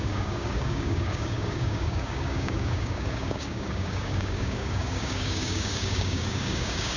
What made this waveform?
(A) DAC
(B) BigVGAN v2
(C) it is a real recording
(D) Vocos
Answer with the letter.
A